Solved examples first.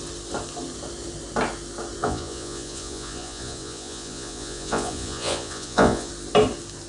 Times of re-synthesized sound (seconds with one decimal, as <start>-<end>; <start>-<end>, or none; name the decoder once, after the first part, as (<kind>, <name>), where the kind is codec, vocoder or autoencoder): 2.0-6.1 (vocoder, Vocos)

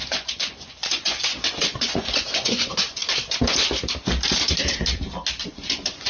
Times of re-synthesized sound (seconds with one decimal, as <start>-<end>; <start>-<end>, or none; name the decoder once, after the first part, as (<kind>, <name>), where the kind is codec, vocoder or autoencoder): 0.0-3.0 (vocoder, Vocos); 5.5-6.1

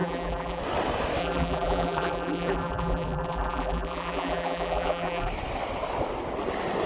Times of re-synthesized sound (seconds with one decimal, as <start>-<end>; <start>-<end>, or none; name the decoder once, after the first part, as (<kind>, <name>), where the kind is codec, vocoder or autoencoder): 0.0-0.6 (vocoder, BigVGAN v2); 1.2-5.3

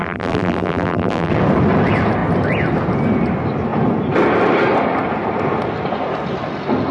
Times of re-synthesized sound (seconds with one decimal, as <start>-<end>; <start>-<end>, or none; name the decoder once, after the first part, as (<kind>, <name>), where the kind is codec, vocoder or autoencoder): 0.0-1.3 (vocoder, BigVGAN v2)

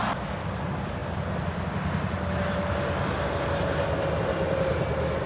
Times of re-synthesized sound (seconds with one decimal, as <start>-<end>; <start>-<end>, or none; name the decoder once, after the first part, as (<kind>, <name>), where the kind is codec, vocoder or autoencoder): none